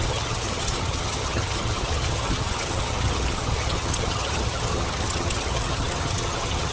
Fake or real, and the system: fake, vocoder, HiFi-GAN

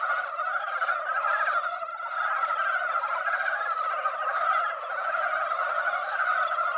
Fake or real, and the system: real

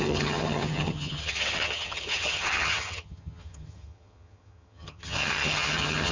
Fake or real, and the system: fake, vocoder, HiFi-GAN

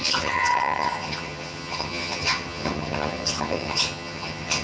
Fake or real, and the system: fake, vocoder, HiFi-GAN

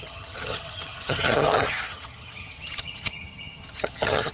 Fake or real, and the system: fake, vocoder, HiFi-GAN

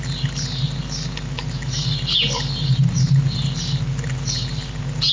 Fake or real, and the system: real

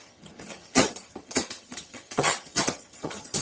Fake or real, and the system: fake, vocoder, HiFi-GAN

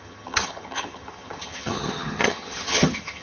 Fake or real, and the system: fake, vocoder, HiFi-GAN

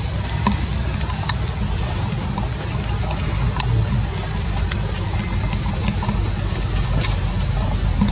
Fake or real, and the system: real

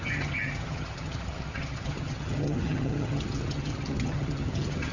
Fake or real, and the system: fake, vocoder, HiFi-GAN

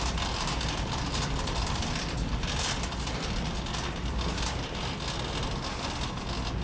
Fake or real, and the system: real